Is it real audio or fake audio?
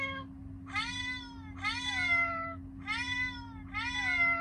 real